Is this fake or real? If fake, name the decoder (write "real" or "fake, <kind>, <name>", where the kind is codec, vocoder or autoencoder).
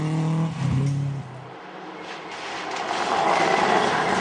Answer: real